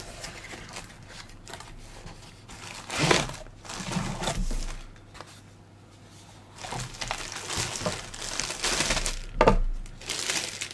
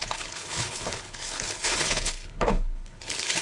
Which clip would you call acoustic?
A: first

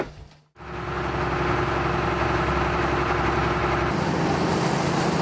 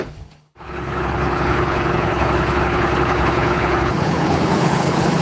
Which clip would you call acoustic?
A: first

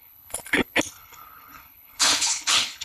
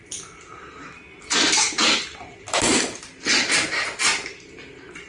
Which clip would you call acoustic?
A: second